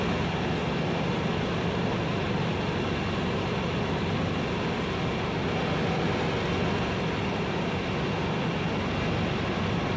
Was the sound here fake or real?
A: real